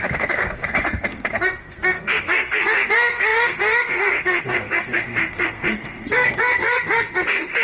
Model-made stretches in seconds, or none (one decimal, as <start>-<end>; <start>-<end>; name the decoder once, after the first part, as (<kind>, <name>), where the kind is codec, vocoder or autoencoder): 0.0-7.6 (codec, SNAC)